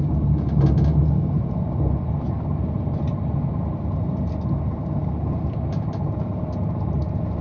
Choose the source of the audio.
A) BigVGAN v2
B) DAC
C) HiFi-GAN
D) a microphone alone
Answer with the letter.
D